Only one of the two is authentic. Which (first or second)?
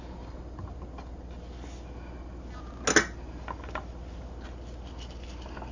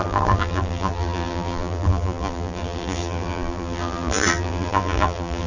first